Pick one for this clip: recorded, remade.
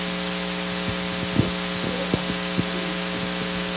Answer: recorded